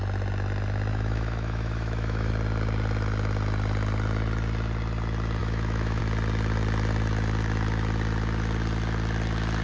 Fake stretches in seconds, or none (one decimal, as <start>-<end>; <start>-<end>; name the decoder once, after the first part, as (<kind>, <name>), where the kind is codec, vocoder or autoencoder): 0.9-2.3 (autoencoder, DAC-VAE); 5.4-6.0